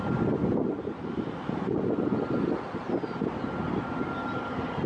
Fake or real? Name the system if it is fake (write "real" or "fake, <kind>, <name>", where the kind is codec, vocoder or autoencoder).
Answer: real